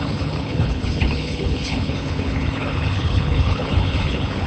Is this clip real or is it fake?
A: fake